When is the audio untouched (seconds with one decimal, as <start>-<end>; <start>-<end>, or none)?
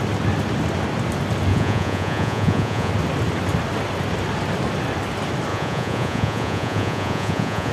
0.0-1.5; 2.9-5.5